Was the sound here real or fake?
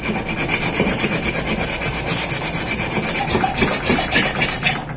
real